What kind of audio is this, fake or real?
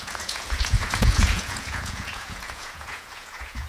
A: fake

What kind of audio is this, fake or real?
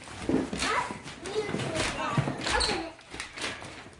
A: real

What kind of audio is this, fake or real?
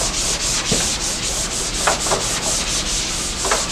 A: real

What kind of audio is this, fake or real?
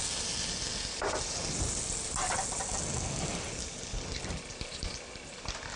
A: real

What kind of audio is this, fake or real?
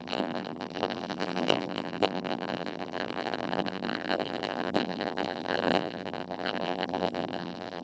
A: fake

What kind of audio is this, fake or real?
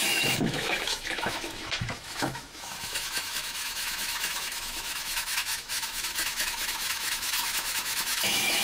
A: fake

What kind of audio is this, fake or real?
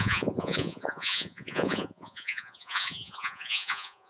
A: fake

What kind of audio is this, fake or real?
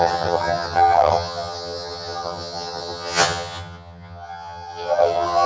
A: fake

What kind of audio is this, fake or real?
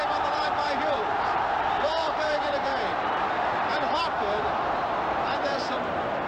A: fake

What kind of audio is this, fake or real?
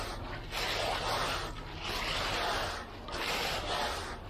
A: real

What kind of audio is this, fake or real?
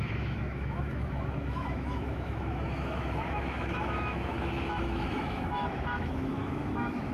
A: fake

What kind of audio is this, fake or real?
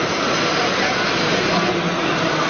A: real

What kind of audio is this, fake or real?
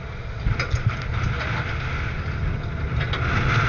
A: real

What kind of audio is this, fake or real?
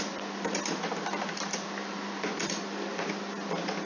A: real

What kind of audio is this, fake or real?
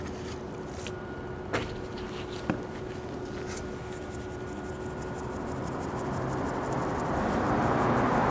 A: real